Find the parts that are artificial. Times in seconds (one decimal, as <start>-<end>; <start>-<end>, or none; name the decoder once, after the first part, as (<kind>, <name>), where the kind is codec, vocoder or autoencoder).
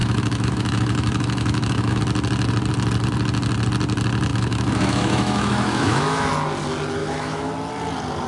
0.0-2.0 (autoencoder, DAC-VAE); 4.3-6.3; 7.0-7.5